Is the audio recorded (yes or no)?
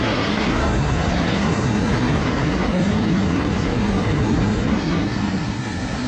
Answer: no